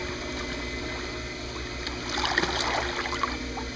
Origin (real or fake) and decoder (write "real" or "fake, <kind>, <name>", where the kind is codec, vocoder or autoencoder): real